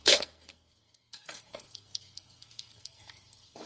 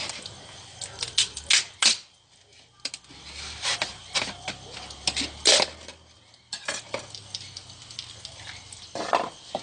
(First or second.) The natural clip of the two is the second